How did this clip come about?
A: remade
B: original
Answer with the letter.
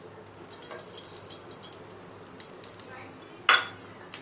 B